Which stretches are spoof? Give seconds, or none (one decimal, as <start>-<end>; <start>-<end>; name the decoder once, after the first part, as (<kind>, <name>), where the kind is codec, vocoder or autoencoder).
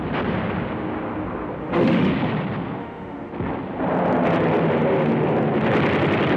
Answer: 1.6-2.1 (autoencoder, DAC-VAE); 2.8-3.3